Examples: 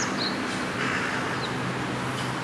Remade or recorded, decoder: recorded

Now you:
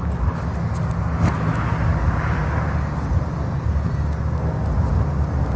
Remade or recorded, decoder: recorded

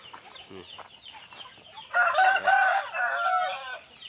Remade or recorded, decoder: recorded